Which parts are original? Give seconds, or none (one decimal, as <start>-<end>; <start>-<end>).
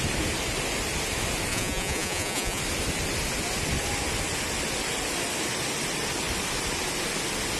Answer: 0.0-1.5; 2.6-7.6